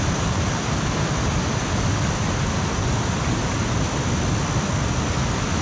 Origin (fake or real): real